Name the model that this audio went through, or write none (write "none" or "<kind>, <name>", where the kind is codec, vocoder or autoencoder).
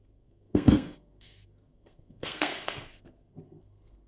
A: codec, SNAC